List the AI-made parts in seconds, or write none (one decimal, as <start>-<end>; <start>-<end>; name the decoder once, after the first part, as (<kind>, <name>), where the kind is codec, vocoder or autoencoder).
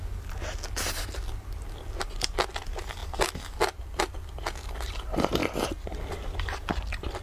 5.4-6.0 (vocoder, BigVGAN v2)